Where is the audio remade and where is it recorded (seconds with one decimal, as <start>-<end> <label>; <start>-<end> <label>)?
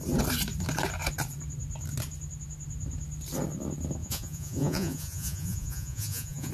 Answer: 0.0-4.0 recorded; 4.0-6.5 remade